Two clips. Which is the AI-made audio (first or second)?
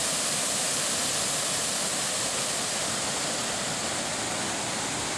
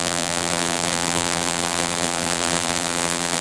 second